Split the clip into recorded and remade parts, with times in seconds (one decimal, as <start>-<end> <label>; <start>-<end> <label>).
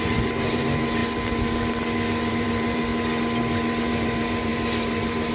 0.0-1.0 remade; 1.0-2.3 recorded; 2.3-2.9 remade; 2.9-3.8 recorded; 3.8-5.3 remade